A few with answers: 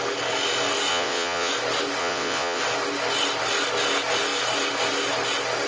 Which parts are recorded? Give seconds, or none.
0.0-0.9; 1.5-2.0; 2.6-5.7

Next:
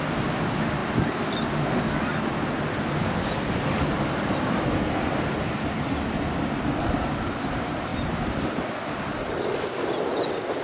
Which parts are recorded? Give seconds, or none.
0.0-10.6